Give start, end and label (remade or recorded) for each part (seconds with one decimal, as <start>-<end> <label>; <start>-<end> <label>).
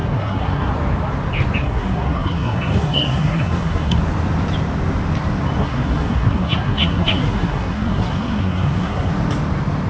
0.0-0.7 remade; 0.7-1.6 recorded; 1.6-4.0 remade; 4.0-5.6 recorded; 5.6-9.1 remade; 9.1-9.9 recorded